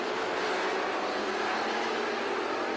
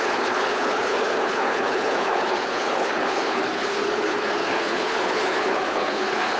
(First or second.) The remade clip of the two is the second